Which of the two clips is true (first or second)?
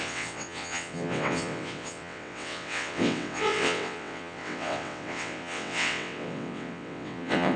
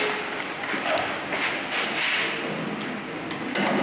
second